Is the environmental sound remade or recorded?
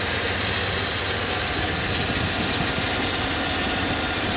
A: recorded